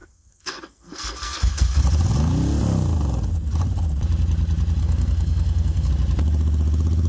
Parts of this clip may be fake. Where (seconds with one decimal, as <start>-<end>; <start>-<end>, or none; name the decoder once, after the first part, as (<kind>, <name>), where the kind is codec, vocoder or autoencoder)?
0.0-1.8 (codec, SNAC); 4.8-5.9